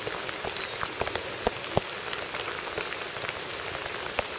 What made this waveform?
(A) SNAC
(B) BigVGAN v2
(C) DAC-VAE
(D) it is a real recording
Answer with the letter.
D